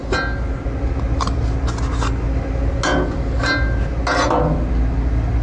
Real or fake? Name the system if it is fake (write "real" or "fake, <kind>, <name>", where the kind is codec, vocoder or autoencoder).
real